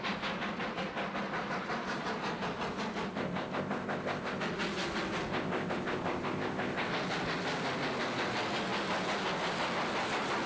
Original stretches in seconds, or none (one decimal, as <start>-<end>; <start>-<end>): 0.0-3.1; 4.4-5.3; 6.9-10.5